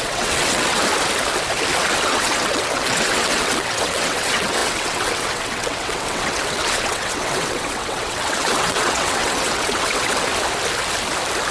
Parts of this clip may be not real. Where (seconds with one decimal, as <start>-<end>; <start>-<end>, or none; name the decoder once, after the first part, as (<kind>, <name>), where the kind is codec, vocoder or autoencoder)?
0.0-0.8 (vocoder, WaveNeXt); 2.0-10.3